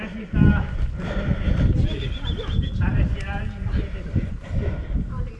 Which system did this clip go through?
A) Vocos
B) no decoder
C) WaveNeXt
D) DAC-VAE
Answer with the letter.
B